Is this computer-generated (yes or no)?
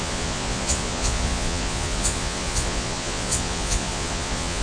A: yes